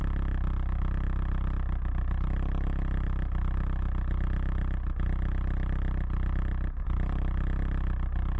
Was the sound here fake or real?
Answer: real